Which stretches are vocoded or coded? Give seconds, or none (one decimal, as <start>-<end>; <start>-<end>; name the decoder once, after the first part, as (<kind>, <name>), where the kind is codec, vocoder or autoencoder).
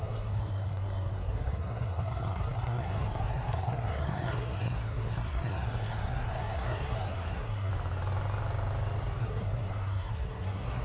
0.0-7.7 (codec, SNAC); 9.2-10.8